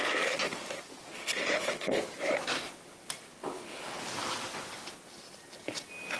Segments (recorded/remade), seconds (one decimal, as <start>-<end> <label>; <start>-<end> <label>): 0.0-1.1 recorded; 1.1-2.0 remade; 2.0-3.3 recorded; 3.3-4.0 remade; 4.0-6.2 recorded